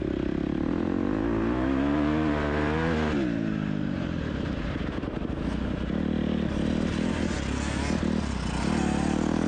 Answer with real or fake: real